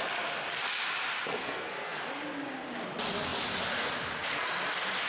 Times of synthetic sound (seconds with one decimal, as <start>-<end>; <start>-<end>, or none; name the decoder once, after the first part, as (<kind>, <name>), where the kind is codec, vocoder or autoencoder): 1.4-2.0 (codec, SNAC)